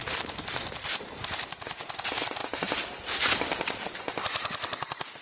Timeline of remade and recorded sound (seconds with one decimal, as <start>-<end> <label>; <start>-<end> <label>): 0.0-5.2 recorded